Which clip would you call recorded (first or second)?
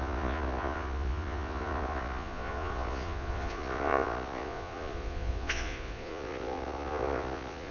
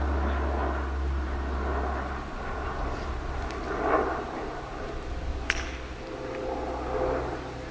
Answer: second